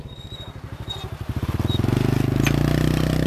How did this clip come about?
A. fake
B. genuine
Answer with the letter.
B